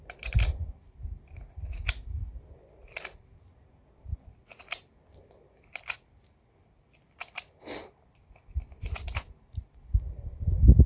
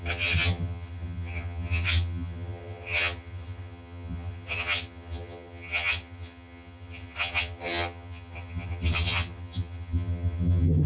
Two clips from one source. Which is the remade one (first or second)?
second